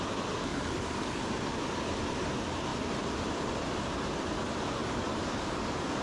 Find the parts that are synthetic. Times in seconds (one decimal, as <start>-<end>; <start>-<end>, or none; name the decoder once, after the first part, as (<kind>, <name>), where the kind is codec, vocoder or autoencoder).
0.5-1.2 (codec, DAC); 4.8-6.0